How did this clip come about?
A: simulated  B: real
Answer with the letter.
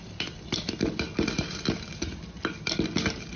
B